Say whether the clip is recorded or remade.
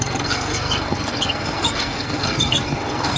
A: remade